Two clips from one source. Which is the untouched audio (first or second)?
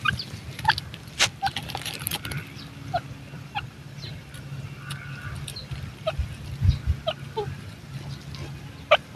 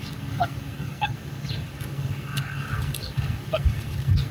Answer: first